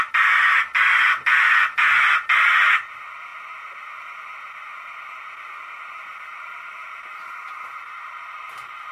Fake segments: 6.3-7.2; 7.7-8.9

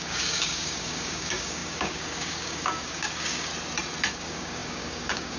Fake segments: 0.0-3.5; 4.1-5.4

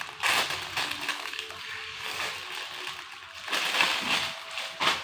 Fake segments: 1.1-2.3